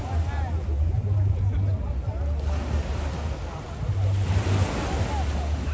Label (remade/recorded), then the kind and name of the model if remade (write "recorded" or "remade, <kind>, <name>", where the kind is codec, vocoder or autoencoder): recorded